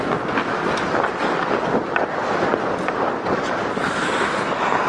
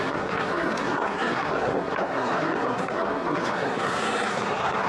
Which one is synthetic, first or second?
second